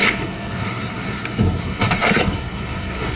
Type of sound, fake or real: fake